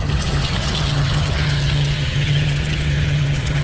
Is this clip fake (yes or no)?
yes